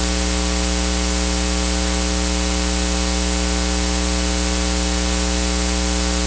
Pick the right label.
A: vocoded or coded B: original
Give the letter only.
B